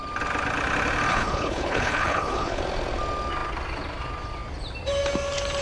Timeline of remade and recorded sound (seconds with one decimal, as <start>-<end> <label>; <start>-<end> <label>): 0.0-1.1 recorded; 1.1-2.6 remade; 2.6-5.6 recorded